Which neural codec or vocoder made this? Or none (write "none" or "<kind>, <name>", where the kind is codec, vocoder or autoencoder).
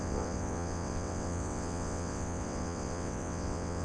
vocoder, WaveNeXt